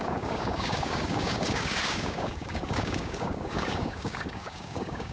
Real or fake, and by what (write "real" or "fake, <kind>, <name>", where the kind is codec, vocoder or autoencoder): fake, codec, DAC